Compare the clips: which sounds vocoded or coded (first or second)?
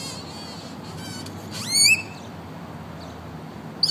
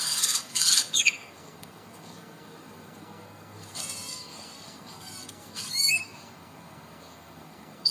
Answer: second